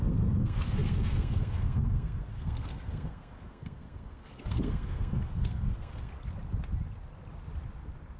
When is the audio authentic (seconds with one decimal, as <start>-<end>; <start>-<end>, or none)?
6.1-8.2